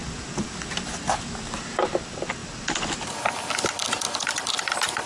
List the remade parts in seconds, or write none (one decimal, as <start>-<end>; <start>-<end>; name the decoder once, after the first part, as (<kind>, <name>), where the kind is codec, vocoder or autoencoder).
none